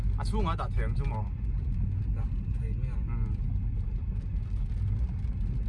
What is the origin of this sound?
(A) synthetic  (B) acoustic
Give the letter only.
B